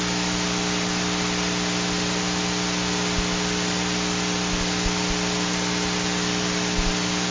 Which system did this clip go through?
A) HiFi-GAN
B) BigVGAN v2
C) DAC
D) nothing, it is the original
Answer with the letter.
D